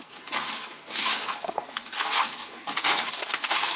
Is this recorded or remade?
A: remade